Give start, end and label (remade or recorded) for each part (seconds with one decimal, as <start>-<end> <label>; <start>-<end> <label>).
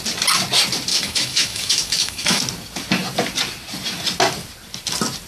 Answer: 0.0-0.9 recorded; 0.9-2.4 remade; 2.4-5.3 recorded